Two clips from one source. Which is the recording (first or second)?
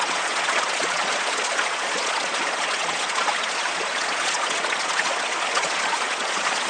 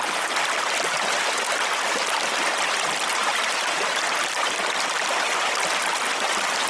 second